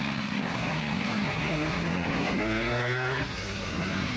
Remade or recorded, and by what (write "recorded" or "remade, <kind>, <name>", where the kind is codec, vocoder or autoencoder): remade, codec, SNAC